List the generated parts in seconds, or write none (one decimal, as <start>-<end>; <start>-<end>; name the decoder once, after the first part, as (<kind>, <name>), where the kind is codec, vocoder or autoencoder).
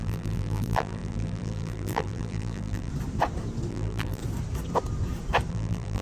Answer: 0.0-2.9 (vocoder, BigVGAN v2); 3.7-4.2; 5.5-6.0